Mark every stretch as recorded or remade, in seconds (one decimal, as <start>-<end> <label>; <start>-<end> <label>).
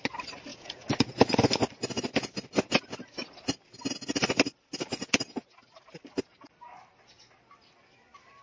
0.0-0.5 recorded; 0.5-1.4 remade; 1.4-8.4 recorded